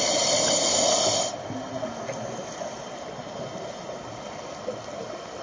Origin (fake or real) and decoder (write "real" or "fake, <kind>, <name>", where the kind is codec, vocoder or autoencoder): real